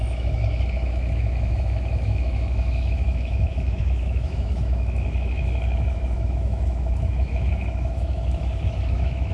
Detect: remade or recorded remade